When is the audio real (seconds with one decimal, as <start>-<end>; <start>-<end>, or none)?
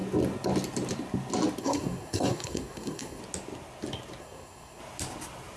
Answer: 0.0-1.6; 3.2-4.2; 4.8-5.6